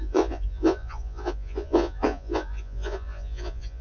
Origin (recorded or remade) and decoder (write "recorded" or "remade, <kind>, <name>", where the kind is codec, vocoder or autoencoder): remade, vocoder, Vocos